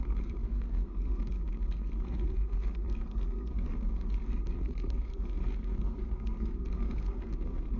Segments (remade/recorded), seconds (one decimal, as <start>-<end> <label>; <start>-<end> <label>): 0.0-7.8 remade